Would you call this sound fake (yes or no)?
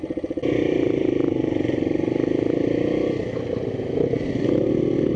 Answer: no